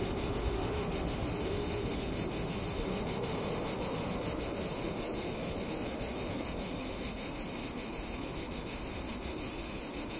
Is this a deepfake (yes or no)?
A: yes